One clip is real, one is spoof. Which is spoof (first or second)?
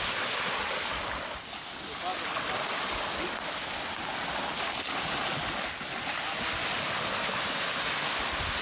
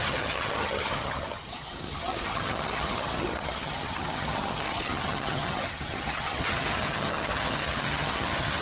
second